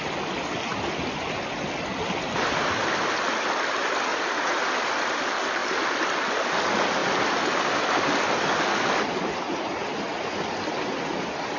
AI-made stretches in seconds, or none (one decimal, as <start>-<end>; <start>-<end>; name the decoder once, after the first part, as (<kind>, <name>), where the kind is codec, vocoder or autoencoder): 4.1-4.7 (vocoder, Vocos)